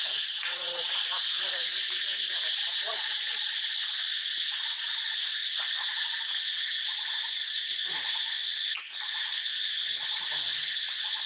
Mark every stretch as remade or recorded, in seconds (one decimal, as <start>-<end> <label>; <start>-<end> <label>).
0.0-3.3 remade; 3.3-4.6 recorded; 4.6-5.4 remade; 5.4-7.1 recorded; 7.1-8.4 remade; 8.4-9.9 recorded; 9.9-10.5 remade; 10.5-11.3 recorded